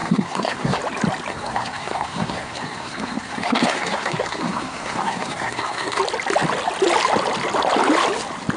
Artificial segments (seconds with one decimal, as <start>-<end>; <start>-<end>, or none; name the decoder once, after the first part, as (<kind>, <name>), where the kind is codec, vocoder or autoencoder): 0.0-0.8 (codec, SNAC); 1.3-6.0